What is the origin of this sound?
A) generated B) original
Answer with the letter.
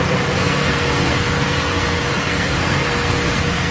A